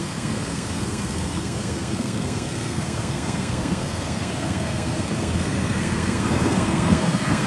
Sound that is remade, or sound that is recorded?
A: remade